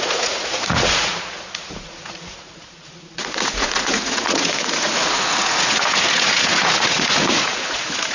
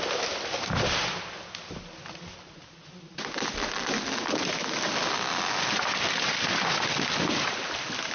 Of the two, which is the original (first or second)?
second